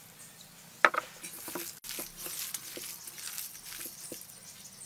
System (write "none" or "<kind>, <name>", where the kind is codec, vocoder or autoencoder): none